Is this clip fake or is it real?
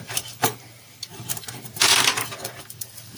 fake